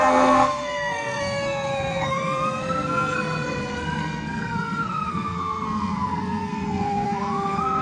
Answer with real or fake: fake